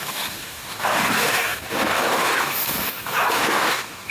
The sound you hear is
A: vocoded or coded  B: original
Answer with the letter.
A